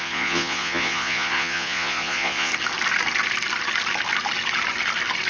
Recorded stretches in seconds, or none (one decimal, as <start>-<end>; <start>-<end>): 2.5-5.3